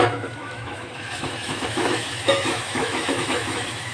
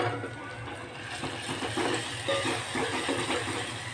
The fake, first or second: first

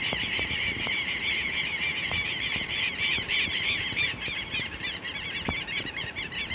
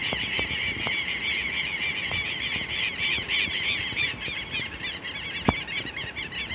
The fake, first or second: first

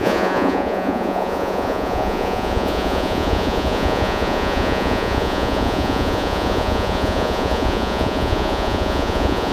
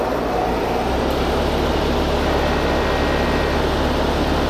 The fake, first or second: first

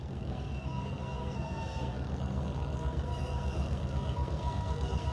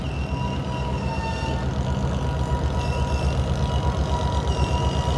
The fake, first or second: first